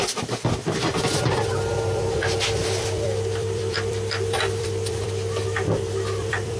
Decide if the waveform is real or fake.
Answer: fake